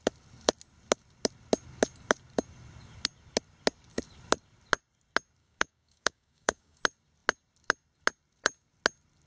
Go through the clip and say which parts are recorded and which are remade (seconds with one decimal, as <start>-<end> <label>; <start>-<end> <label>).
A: 0.0-5.4 recorded; 5.4-6.8 remade; 6.8-9.3 recorded